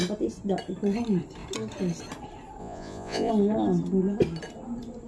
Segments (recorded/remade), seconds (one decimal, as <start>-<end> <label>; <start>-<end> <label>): 0.0-2.6 recorded; 2.6-3.3 remade; 3.3-5.1 recorded